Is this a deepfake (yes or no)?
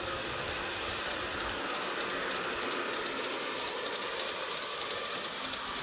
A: no